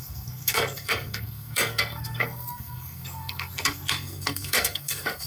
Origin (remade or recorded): remade